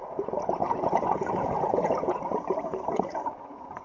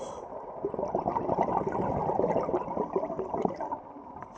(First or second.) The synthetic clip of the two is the first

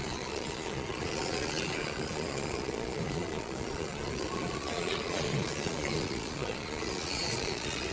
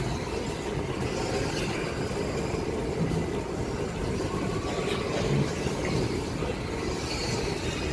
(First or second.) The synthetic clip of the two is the first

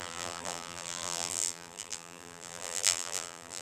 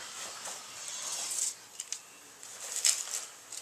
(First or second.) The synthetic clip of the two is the first